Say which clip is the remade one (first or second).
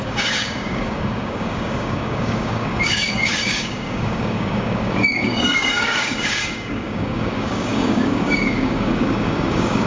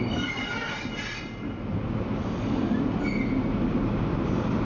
first